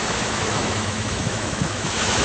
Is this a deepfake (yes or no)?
yes